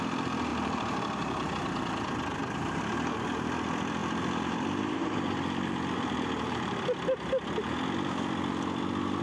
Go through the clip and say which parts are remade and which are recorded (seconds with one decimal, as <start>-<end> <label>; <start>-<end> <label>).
0.0-0.5 recorded; 0.5-1.5 remade; 1.5-4.0 recorded; 4.0-6.8 remade; 6.8-9.2 recorded